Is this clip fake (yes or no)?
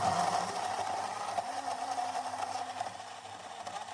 no